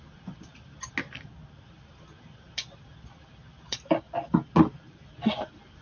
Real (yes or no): yes